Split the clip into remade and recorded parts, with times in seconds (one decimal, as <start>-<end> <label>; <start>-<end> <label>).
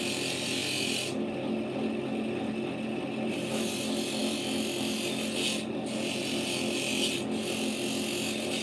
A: 0.0-8.6 recorded